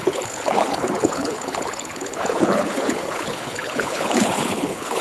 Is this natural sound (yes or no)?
no